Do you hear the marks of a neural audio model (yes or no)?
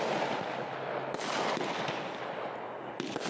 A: no